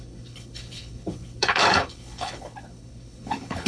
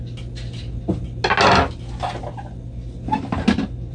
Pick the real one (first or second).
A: second